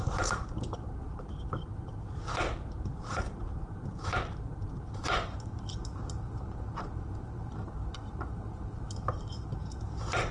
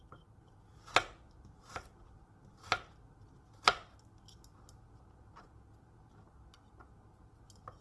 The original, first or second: second